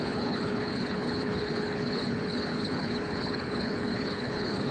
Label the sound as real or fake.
fake